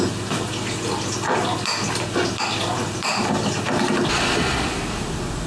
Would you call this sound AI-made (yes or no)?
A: no